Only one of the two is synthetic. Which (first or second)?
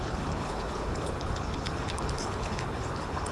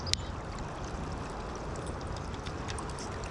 first